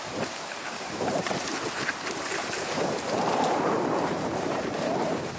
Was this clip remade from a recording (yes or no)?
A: yes